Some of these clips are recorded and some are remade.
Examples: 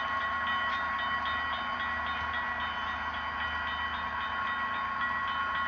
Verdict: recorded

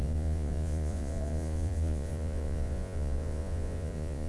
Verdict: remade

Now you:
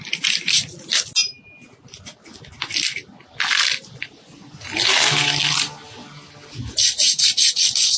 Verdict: recorded